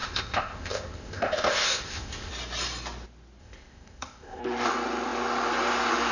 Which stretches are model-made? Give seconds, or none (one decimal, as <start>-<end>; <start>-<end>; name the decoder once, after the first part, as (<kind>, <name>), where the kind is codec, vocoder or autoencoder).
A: 0.0-2.3 (codec, ZipCodec); 3.4-4.4